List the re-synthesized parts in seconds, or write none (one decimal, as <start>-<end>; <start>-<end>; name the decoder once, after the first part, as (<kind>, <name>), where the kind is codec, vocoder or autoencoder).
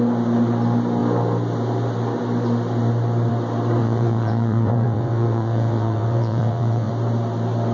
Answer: 3.8-6.9 (vocoder, WaveNeXt)